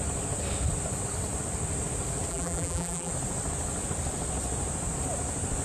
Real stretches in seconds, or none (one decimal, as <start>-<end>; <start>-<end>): 0.0-2.3; 3.1-5.6